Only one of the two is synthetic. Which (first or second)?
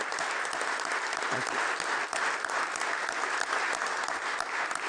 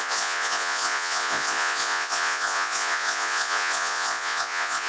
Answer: second